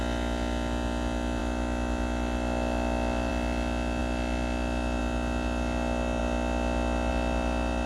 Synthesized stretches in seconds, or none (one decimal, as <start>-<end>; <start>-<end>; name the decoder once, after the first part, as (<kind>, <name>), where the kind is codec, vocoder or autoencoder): none

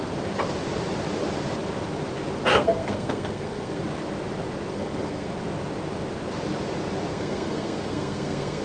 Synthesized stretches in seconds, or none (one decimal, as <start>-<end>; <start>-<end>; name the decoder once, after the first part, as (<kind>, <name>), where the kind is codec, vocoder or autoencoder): 2.5-3.8 (codec, SNAC); 4.7-5.3; 7.1-8.6

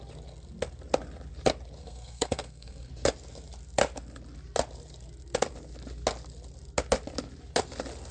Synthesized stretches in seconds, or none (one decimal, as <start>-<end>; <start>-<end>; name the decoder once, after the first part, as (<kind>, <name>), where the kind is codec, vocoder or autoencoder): 1.8-2.9 (codec, SNAC)

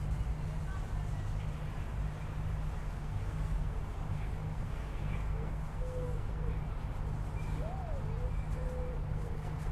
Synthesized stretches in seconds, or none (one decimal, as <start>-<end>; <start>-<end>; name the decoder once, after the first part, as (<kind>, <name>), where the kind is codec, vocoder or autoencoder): 2.8-6.7 (codec, SNAC); 9.0-9.7

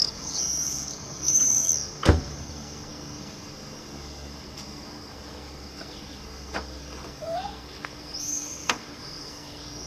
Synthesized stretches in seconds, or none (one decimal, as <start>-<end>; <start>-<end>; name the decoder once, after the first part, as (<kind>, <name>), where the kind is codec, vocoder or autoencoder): 0.0-9.9 (codec, SNAC)

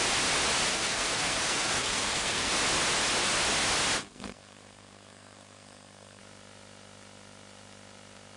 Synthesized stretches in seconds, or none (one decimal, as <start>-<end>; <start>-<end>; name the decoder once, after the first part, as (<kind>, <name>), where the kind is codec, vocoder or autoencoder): 0.7-2.5 (codec, SNAC); 4.0-6.2

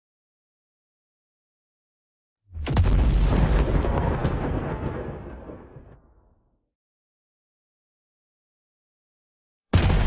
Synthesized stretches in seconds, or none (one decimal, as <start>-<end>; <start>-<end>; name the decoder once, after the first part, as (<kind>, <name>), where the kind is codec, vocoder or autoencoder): 0.0-0.6 (codec, SNAC); 3.8-10.1

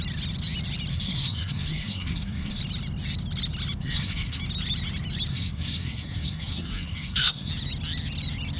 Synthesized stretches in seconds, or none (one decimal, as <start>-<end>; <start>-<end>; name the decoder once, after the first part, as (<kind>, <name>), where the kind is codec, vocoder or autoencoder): 0.9-2.6 (codec, SNAC); 3.8-4.4; 5.3-7.5